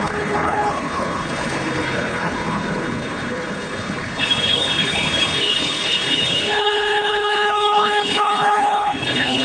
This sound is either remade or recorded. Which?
remade